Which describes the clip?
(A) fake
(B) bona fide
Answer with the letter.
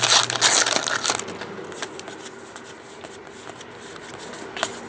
B